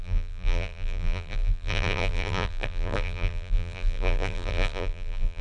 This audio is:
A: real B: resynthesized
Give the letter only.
B